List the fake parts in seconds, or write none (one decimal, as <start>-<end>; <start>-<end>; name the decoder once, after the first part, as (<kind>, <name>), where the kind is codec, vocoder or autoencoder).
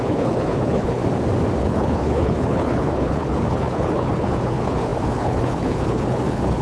0.0-1.0 (codec, HILCodec); 1.6-6.6